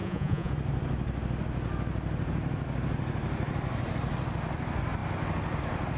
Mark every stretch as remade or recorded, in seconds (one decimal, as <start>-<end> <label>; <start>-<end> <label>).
0.0-0.5 remade; 0.5-6.0 recorded